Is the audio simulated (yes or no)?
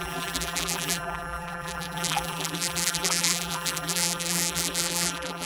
yes